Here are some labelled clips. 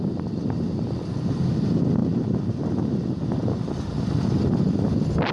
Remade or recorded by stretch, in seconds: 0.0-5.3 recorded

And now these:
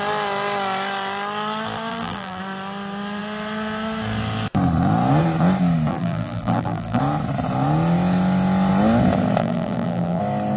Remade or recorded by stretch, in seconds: 0.0-1.9 recorded; 1.9-2.4 remade; 2.4-5.9 recorded; 5.9-7.0 remade; 7.0-9.4 recorded; 9.4-10.2 remade; 10.2-10.6 recorded

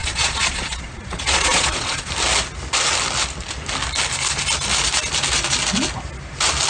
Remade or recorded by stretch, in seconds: 0.0-2.1 remade; 2.1-6.7 recorded

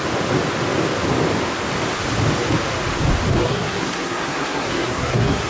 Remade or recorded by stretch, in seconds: 0.0-3.4 recorded; 3.4-5.5 remade

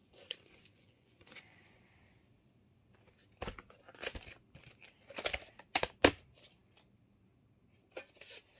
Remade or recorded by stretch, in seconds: 0.0-1.8 remade; 1.8-8.6 recorded

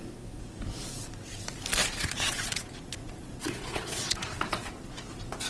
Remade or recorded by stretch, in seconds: 0.0-1.8 recorded; 1.8-4.7 remade; 4.7-5.5 recorded

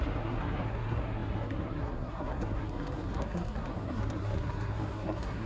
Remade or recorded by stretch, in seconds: 0.0-5.5 remade

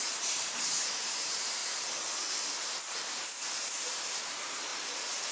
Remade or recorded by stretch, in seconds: 0.0-1.6 remade; 1.6-3.4 recorded; 3.4-4.7 remade; 4.7-5.3 recorded